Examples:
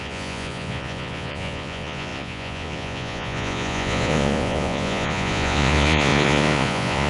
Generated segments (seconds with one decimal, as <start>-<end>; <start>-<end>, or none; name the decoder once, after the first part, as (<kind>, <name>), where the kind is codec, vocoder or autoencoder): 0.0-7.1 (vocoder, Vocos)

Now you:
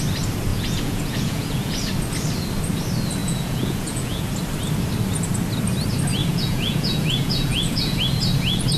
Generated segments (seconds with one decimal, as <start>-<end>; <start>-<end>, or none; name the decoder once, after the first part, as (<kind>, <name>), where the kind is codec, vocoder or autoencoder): 0.5-1.9 (vocoder, Vocos); 3.2-4.3; 6.2-8.0

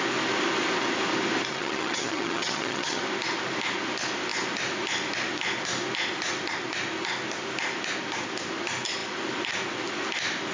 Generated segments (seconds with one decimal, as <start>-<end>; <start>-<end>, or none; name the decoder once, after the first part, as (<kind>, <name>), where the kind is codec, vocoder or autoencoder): 1.5-3.0 (vocoder, HiFi-GAN)

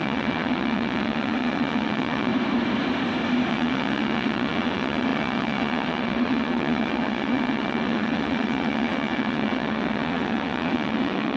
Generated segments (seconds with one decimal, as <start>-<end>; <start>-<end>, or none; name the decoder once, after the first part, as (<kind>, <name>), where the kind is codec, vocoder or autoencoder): 0.0-2.3 (vocoder, WaveNeXt); 3.5-11.4

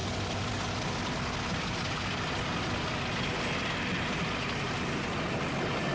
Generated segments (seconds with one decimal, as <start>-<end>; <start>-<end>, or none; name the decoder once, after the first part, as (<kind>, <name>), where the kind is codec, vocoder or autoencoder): none

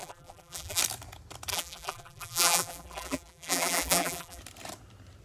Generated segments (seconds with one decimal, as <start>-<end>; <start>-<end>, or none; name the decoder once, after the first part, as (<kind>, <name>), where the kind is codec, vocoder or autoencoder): 0.0-0.8 (vocoder, BigVGAN v2); 1.5-4.4

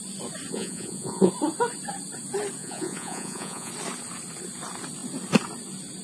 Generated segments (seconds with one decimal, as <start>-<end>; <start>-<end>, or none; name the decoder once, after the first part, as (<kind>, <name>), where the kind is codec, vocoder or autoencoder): 0.5-1.3 (vocoder, Vocos); 2.6-3.7

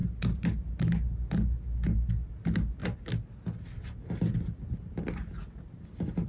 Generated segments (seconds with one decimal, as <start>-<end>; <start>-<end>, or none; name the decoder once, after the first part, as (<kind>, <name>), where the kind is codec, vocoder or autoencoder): none